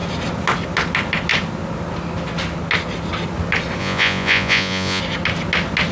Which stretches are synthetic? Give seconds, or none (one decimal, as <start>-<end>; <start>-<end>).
3.8-5.0